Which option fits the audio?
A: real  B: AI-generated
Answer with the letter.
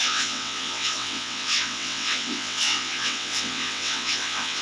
B